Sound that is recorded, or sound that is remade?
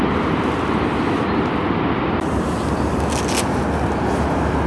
recorded